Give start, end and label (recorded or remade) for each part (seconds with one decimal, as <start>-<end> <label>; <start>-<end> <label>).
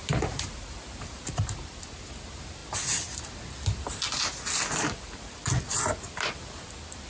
0.0-0.7 remade; 0.7-7.1 recorded